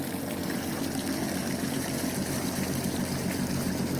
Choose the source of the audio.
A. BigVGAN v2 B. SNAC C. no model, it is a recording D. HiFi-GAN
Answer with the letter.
C